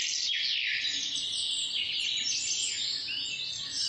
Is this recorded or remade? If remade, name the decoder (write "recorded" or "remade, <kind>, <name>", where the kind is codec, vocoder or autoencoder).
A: recorded